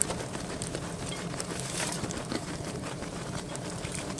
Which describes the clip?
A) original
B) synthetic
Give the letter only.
B